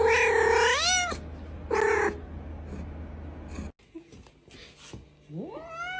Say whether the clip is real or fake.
real